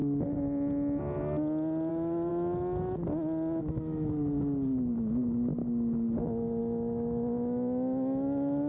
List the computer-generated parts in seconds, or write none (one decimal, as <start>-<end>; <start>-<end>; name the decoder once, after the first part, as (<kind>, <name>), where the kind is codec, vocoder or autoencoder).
1.9-2.3 (autoencoder, DAC-VAE); 3.6-5.6; 6.6-8.7